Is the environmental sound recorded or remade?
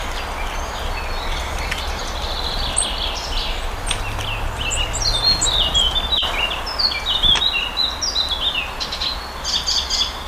recorded